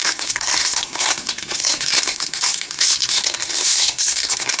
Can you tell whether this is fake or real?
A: fake